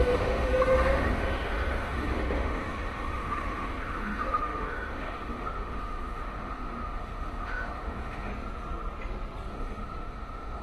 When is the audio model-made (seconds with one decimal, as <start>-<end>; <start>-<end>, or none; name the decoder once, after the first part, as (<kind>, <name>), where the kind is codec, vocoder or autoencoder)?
0.0-8.3 (autoencoder, DAC-VAE); 9.5-10.6